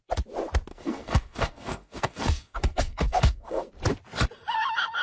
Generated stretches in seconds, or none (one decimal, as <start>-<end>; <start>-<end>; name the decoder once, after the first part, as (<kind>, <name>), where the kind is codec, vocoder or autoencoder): 0.7-3.7 (codec, SNAC)